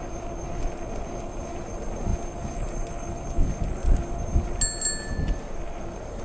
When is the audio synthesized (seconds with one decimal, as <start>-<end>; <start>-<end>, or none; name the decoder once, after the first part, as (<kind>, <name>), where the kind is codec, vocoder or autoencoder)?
none